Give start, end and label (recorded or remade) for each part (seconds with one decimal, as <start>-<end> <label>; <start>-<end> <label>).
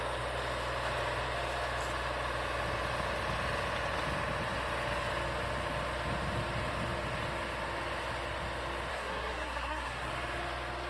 0.0-8.9 recorded; 8.9-10.1 remade; 10.1-10.9 recorded